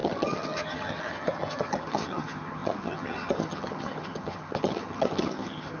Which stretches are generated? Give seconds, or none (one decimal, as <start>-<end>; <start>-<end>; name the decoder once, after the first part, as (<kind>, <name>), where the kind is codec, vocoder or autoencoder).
0.0-5.8 (vocoder, HiFi-GAN)